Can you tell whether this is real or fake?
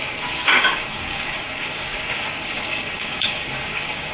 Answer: fake